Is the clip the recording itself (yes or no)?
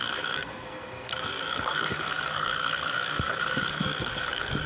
no